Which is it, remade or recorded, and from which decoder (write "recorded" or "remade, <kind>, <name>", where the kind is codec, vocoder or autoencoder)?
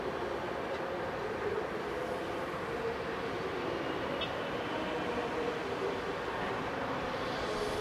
recorded